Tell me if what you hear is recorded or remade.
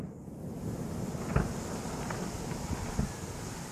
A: recorded